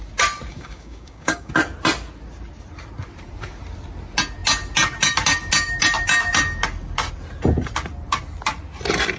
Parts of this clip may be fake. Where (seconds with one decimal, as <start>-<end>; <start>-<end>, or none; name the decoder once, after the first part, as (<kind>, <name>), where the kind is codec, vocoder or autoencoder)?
0.5-1.5 (codec, DAC)